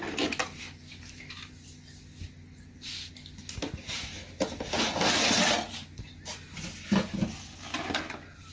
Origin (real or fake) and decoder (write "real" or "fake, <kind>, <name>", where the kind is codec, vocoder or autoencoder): real